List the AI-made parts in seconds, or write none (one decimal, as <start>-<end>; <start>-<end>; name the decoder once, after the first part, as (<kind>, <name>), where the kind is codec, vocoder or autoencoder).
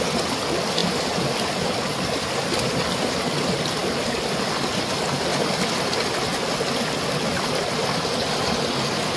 0.8-3.0 (vocoder, BigVGAN v2); 3.8-4.5; 5.3-6.0